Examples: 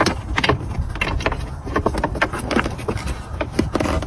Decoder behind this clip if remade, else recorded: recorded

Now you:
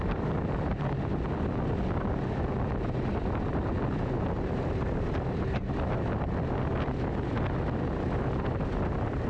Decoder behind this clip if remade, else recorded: recorded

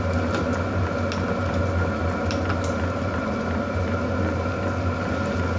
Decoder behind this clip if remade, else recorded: recorded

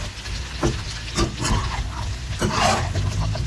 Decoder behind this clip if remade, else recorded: recorded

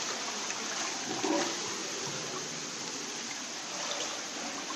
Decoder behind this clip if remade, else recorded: recorded